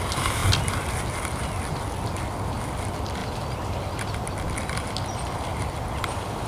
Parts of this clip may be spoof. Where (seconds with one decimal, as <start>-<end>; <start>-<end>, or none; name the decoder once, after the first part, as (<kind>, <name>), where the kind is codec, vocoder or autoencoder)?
5.5-6.0 (vocoder, BigVGAN v2)